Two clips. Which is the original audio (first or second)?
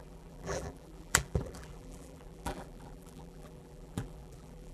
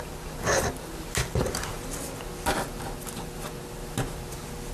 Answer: second